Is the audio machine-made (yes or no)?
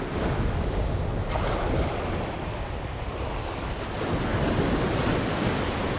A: no